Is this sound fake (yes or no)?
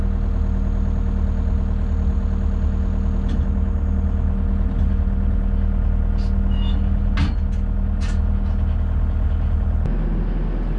no